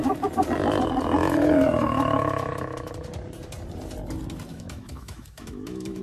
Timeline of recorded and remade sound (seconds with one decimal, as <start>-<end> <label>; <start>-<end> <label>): 0.0-1.2 recorded; 1.2-2.9 remade; 2.9-4.5 recorded; 4.5-6.0 remade